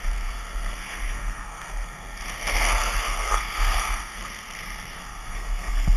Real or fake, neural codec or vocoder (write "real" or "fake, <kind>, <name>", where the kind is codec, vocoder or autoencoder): fake, codec, SNAC